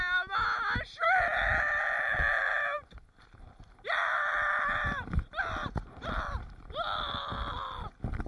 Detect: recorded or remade recorded